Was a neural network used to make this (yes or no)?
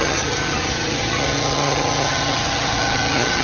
yes